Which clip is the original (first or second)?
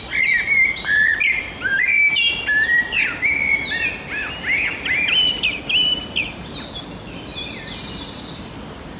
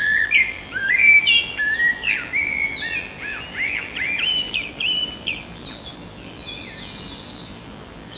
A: first